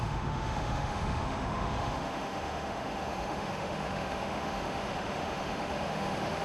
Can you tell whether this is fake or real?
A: fake